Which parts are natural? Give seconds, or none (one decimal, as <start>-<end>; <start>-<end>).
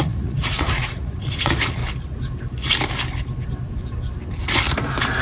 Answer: 1.8-5.2